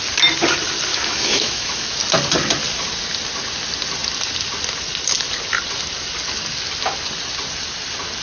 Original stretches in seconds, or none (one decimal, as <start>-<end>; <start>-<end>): 0.0-0.9; 2.0-8.2